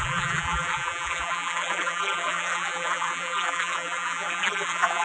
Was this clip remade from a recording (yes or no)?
yes